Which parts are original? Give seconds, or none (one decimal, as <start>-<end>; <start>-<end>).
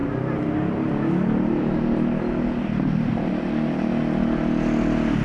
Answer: 0.0-5.2